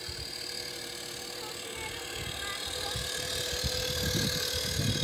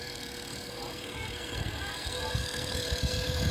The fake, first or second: second